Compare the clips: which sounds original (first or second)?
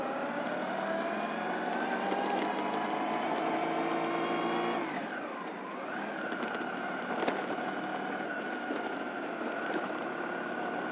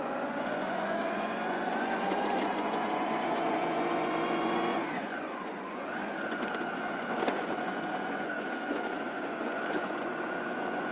first